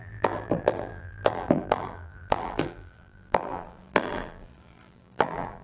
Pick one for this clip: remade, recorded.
remade